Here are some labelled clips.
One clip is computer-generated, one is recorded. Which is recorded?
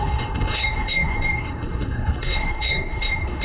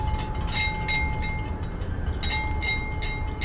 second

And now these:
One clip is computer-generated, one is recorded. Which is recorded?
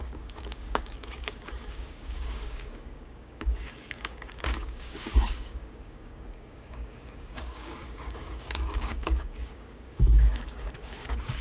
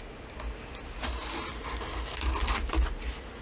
second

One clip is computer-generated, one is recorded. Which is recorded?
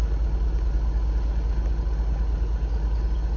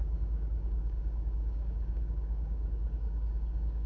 first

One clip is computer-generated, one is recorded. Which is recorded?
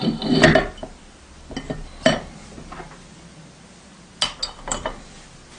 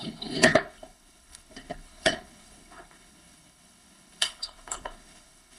first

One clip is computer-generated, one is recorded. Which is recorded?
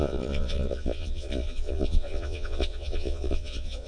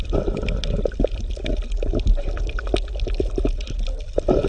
second